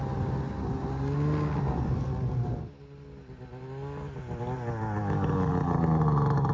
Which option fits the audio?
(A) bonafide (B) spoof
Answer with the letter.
A